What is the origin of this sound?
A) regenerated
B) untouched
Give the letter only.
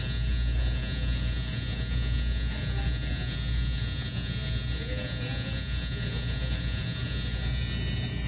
B